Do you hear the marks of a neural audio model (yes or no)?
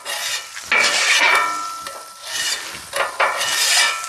no